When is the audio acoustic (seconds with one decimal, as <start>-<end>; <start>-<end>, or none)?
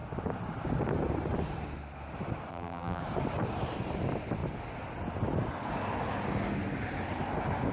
0.0-2.5; 3.0-7.7